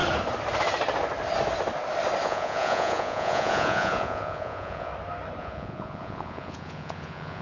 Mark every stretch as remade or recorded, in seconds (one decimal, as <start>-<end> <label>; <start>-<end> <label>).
0.0-2.2 recorded; 2.2-4.9 remade; 4.9-5.4 recorded; 5.4-7.4 remade